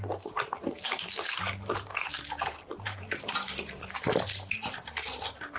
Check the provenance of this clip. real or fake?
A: fake